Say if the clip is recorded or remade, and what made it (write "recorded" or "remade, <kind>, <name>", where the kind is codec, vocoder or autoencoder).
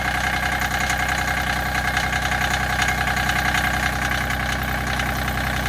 recorded